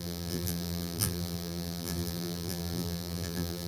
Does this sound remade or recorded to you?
remade